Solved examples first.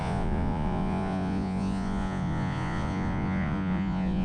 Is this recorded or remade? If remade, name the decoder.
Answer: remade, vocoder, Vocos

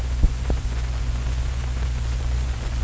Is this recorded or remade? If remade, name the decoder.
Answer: remade, vocoder, Vocos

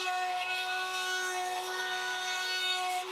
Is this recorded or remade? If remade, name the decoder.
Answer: remade, codec, SNAC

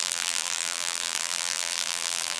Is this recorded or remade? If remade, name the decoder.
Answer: remade, vocoder, BigVGAN v2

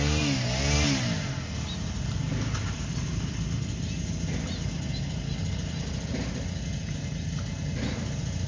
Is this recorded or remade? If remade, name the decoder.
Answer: recorded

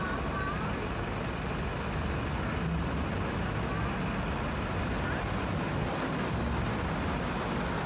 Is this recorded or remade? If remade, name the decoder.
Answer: recorded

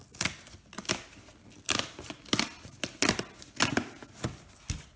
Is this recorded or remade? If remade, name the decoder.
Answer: recorded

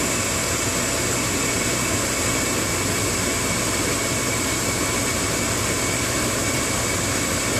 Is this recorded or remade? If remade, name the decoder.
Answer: recorded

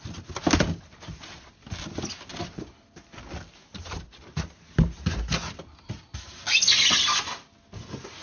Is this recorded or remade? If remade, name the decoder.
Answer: recorded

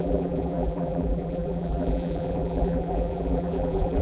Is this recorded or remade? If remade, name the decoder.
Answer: remade, vocoder, BigVGAN v2